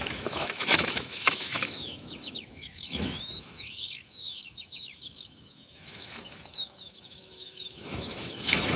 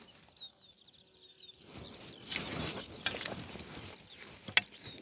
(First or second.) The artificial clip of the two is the first